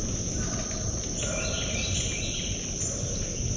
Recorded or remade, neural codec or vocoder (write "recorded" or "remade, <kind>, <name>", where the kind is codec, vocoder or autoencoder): recorded